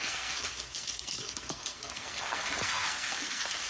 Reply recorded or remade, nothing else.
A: remade